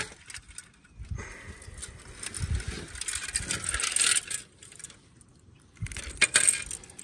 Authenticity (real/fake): real